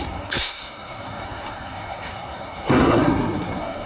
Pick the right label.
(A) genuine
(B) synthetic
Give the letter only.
B